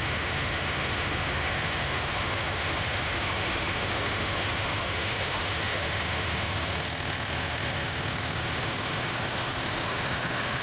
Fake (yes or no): yes